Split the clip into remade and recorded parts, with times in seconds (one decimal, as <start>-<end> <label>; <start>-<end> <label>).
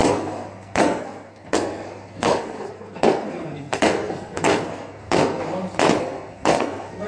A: 0.0-5.4 remade; 5.4-6.0 recorded; 6.0-7.1 remade